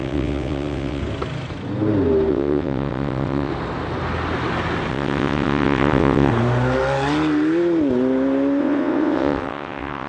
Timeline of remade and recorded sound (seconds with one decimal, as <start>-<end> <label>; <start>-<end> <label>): 0.0-1.0 remade; 1.0-2.3 recorded; 2.3-3.5 remade; 3.5-4.9 recorded; 4.9-6.3 remade; 6.3-8.6 recorded; 8.6-10.1 remade